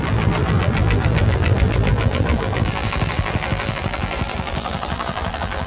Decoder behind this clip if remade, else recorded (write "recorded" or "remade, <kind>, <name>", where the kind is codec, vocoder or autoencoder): remade, vocoder, BigVGAN v2